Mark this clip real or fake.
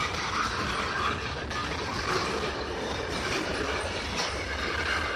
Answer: real